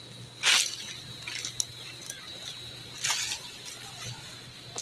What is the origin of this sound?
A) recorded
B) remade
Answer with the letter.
A